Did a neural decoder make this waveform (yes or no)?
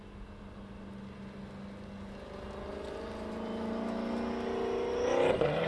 no